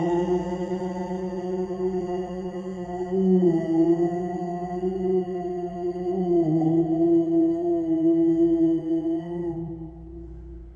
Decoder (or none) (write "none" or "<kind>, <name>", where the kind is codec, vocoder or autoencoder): vocoder, Vocos